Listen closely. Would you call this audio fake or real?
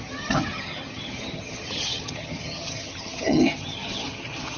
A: fake